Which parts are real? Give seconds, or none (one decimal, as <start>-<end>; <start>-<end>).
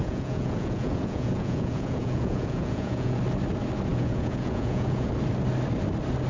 3.2-3.9; 5.1-6.3